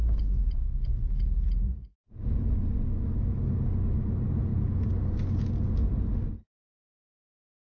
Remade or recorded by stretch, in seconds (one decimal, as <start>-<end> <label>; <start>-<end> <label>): 0.0-7.7 recorded

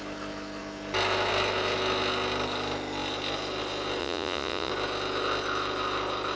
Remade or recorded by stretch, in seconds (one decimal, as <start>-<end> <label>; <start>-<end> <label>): 0.0-4.0 recorded; 4.0-4.7 remade; 4.7-6.4 recorded

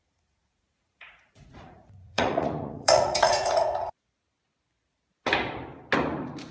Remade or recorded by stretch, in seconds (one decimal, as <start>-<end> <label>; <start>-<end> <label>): 0.0-3.9 remade; 3.9-6.5 recorded

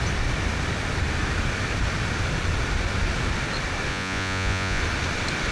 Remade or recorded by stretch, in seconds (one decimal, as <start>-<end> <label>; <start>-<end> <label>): 0.0-3.9 recorded; 3.9-4.8 remade; 4.8-5.5 recorded

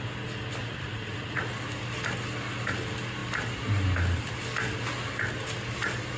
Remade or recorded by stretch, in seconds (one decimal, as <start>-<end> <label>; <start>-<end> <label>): 0.0-0.6 recorded; 0.6-1.4 remade; 1.4-6.2 recorded